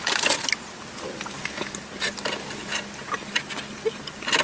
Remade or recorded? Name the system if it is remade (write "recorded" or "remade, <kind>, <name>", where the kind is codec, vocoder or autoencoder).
recorded